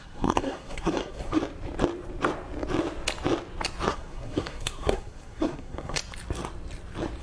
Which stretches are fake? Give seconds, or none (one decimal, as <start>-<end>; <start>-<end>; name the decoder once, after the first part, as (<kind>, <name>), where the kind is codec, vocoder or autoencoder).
0.0-1.4 (codec, SNAC); 3.9-6.0